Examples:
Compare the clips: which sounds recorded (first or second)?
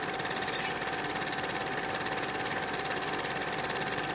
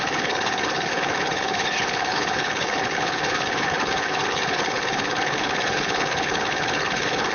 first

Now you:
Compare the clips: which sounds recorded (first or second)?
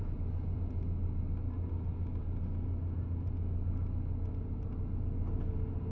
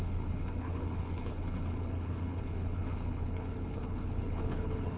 first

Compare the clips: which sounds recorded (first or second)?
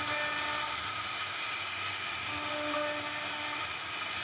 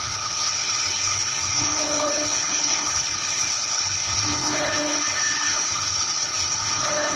first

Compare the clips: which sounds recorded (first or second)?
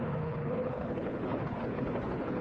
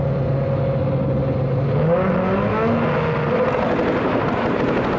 second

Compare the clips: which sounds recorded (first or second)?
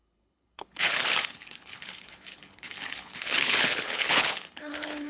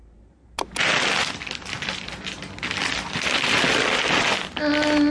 second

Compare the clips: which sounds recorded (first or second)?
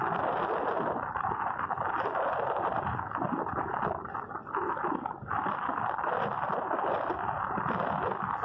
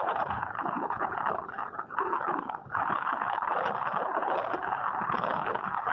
first